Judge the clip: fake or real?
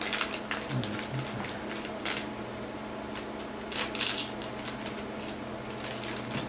real